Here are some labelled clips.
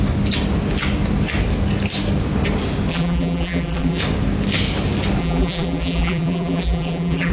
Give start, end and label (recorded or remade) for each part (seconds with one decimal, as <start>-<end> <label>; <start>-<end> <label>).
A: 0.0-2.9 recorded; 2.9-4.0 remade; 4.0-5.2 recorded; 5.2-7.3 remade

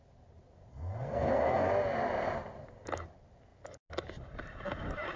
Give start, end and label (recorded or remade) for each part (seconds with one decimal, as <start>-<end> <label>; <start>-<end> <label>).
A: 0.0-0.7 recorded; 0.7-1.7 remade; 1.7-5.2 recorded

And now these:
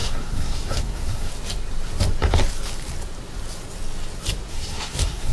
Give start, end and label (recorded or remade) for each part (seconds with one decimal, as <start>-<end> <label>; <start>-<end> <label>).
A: 0.0-1.3 remade; 1.3-4.5 recorded; 4.5-5.3 remade